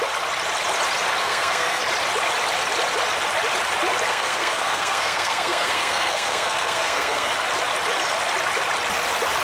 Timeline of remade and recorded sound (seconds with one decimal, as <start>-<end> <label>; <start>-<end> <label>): 0.0-1.2 recorded; 1.2-1.8 remade; 1.8-4.1 recorded; 4.1-7.3 remade; 7.3-9.4 recorded